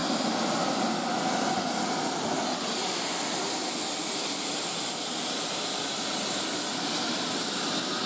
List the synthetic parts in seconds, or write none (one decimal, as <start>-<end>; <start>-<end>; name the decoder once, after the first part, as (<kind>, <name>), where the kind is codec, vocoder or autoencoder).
none